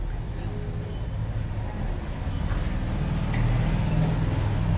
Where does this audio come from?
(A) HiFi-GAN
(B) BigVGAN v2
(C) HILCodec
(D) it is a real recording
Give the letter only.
D